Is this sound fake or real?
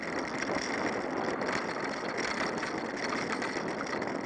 real